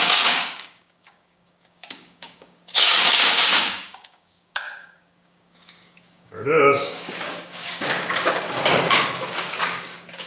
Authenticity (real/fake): fake